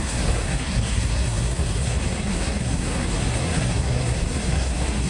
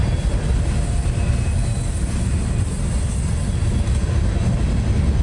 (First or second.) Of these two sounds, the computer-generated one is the first